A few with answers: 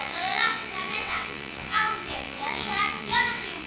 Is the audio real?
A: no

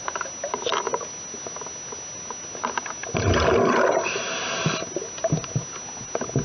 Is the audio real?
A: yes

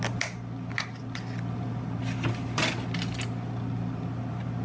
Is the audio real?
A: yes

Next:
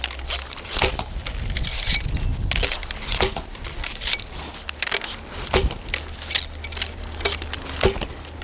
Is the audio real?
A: yes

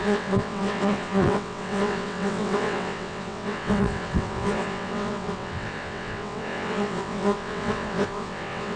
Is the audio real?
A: no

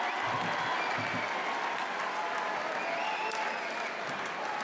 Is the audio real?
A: yes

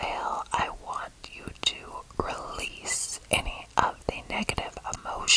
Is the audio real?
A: yes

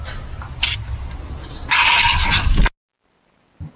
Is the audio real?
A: yes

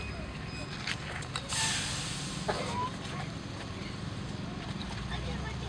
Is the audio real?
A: yes